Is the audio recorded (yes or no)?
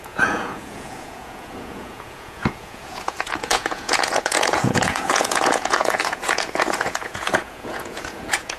no